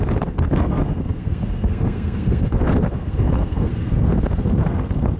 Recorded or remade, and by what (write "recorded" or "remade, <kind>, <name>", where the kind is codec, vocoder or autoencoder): remade, codec, SNAC